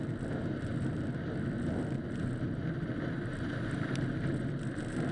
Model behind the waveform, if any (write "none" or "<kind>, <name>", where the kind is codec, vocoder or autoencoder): none